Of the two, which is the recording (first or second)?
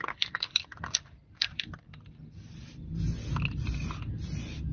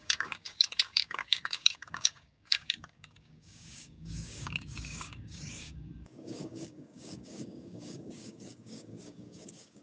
first